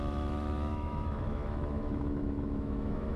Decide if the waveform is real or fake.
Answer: fake